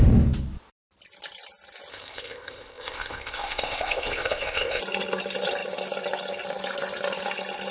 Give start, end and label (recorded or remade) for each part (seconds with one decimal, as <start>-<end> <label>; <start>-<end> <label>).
0.0-1.9 recorded; 1.9-4.8 remade; 4.8-7.7 recorded